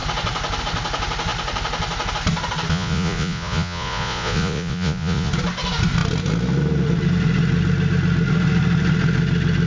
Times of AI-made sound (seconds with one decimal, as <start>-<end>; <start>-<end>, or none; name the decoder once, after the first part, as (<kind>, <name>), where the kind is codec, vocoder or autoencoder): 2.7-5.3 (vocoder, Vocos)